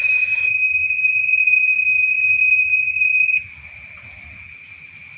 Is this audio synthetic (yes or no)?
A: yes